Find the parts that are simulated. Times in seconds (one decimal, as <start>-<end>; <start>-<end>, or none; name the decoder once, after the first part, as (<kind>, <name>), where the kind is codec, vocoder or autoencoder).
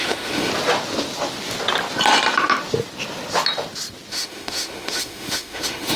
0.0-0.5 (autoencoder, DAC-VAE); 4.1-6.0